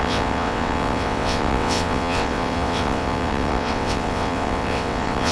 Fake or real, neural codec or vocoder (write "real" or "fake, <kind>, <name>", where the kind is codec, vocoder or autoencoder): fake, vocoder, WaveNeXt